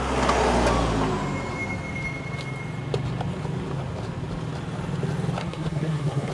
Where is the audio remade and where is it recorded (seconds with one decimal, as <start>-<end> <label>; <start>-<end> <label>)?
0.0-5.4 recorded; 5.4-6.3 remade